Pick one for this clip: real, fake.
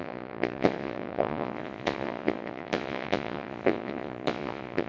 fake